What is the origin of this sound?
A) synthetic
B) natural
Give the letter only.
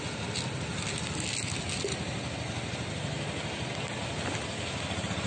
B